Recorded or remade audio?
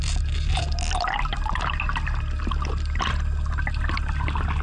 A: recorded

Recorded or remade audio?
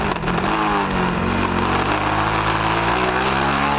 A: recorded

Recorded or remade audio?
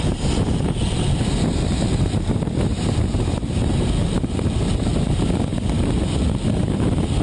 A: recorded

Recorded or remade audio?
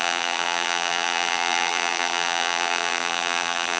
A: remade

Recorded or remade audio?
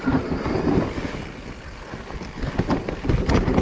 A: recorded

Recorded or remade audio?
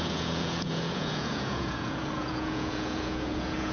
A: remade